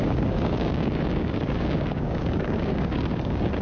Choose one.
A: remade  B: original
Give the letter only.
A